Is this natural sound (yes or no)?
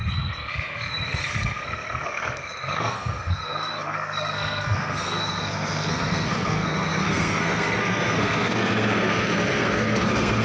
no